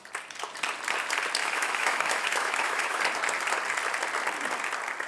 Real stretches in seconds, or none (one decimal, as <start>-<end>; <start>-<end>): 0.0-1.4; 3.0-5.1